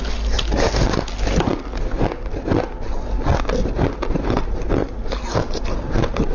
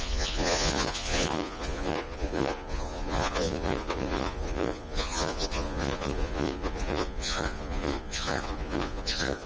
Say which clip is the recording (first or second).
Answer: first